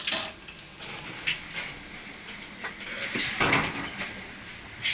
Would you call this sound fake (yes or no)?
no